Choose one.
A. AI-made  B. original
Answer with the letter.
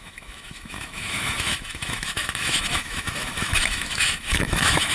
A